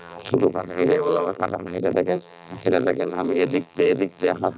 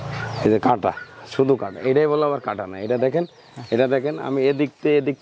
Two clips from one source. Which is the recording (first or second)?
second